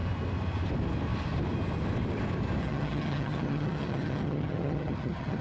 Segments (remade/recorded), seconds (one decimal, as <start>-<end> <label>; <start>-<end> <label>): 0.0-2.6 recorded; 2.6-5.4 remade